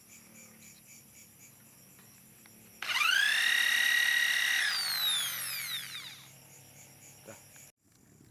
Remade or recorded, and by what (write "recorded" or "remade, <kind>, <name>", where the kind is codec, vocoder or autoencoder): recorded